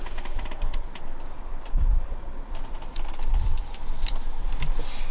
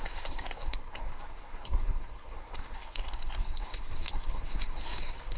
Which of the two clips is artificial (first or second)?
second